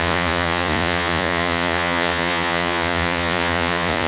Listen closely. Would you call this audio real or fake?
fake